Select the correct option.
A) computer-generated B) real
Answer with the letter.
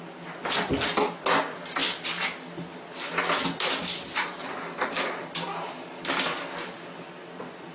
B